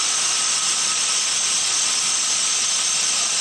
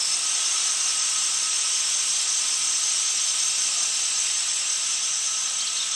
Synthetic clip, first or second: first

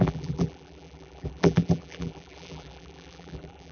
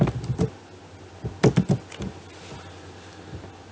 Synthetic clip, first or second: first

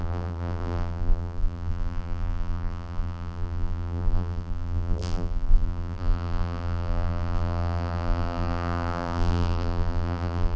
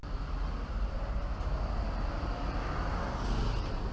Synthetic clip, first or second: first